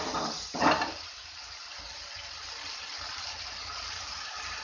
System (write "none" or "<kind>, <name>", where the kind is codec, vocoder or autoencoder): none